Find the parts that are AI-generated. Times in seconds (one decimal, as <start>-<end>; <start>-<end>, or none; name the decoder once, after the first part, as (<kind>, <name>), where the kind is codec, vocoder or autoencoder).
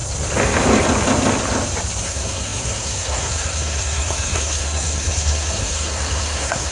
2.0-6.7 (codec, SNAC)